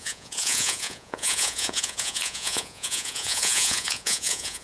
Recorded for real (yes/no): no